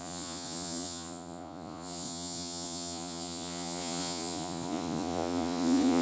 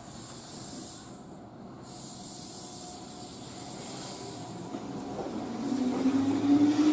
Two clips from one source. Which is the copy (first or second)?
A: first